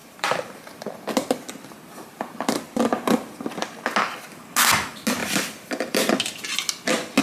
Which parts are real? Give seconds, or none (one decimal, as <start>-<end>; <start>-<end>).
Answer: 0.9-5.2; 6.1-7.2